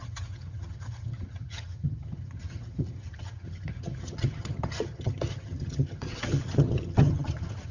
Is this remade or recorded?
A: remade